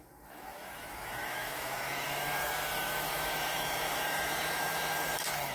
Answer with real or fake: fake